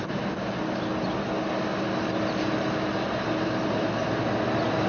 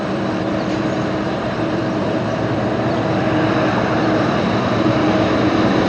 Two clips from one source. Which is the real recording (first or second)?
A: first